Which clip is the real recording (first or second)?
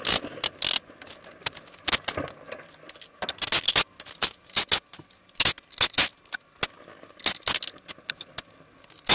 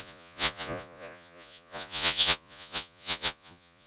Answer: first